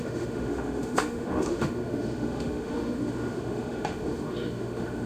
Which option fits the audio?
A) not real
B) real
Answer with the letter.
A